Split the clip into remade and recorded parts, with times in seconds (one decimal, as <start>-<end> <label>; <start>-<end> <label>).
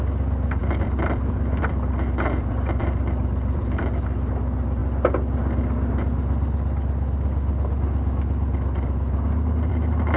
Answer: 0.0-0.6 recorded; 0.6-3.8 remade; 3.8-10.2 recorded